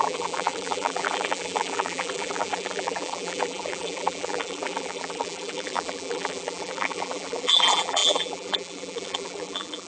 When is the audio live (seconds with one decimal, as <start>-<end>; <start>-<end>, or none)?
none